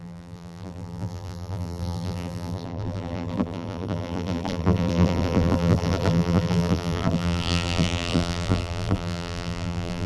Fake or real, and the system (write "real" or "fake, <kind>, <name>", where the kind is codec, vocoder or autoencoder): fake, vocoder, BigVGAN v2